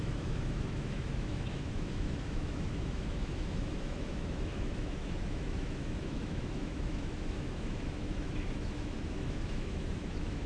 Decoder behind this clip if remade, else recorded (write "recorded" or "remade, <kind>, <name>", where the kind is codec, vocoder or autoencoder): remade, autoencoder, DAC-VAE